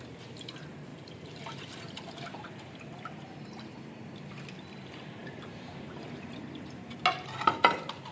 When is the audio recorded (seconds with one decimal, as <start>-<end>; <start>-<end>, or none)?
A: 0.0-0.9; 1.7-5.2; 7.0-8.1